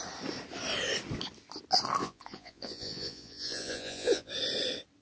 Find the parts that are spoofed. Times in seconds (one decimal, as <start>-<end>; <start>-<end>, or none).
2.0-4.3